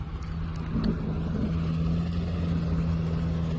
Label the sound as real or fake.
real